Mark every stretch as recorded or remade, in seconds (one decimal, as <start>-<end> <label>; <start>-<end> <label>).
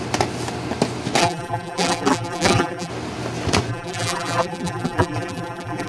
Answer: 0.0-1.2 recorded; 1.2-2.9 remade; 2.9-3.7 recorded; 3.7-5.9 remade